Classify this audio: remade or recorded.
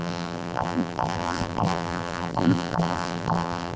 remade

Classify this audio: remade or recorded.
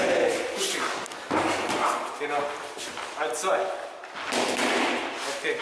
recorded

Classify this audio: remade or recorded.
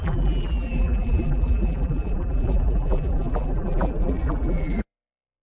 remade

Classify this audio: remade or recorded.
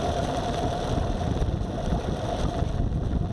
recorded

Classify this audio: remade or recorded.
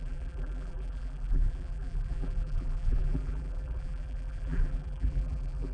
remade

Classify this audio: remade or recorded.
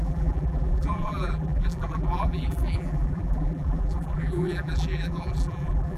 remade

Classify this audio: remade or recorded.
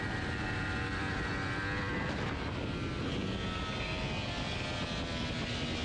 recorded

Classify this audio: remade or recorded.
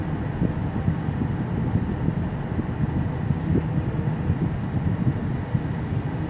recorded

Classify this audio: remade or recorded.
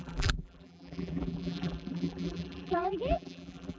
remade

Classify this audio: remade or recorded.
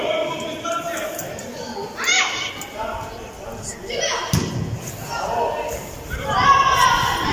recorded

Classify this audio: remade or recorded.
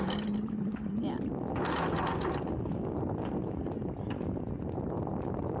recorded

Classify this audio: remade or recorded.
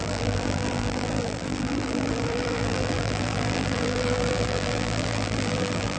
remade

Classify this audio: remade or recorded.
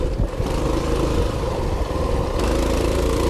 remade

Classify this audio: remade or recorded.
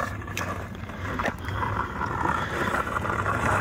remade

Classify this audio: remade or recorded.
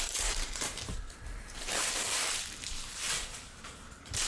remade